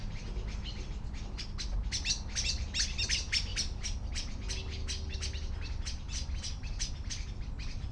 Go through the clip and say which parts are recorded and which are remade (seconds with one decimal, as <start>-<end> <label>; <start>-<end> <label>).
0.0-7.9 recorded